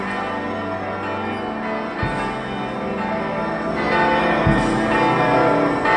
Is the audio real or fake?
real